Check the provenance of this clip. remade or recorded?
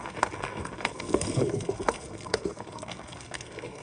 remade